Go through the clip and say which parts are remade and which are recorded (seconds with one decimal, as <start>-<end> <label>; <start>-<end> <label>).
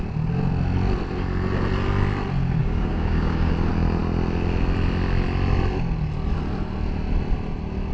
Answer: 0.0-2.6 recorded; 2.6-3.5 remade; 3.5-7.9 recorded